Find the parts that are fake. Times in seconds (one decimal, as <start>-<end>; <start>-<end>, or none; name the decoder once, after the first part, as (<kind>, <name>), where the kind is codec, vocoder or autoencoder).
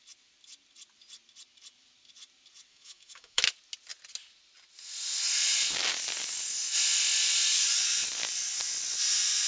2.7-3.5 (autoencoder, DAC-VAE)